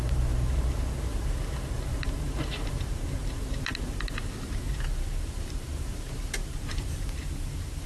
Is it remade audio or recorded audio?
remade